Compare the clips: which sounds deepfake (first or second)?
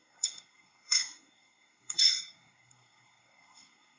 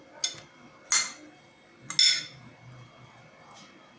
first